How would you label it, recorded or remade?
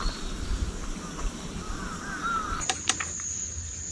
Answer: recorded